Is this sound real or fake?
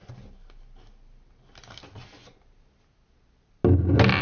real